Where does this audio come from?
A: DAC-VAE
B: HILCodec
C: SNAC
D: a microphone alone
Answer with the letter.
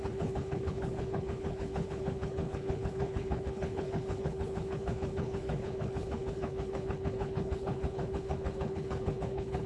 B